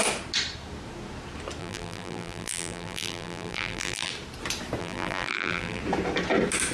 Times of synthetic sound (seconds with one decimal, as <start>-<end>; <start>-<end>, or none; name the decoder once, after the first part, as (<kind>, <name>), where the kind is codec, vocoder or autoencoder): 1.6-4.1 (vocoder, BigVGAN v2); 4.8-5.8